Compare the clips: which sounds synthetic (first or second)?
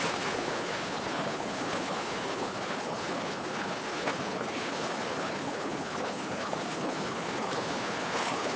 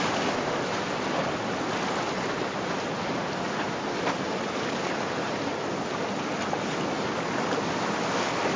first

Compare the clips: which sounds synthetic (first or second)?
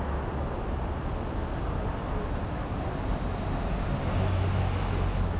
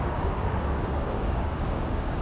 second